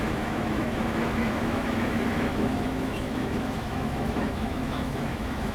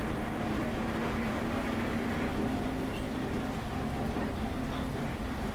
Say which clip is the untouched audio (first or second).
second